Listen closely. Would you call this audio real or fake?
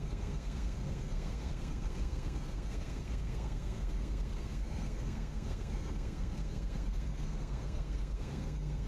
fake